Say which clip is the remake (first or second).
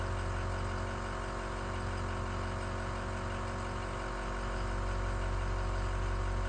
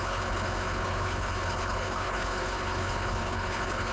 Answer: second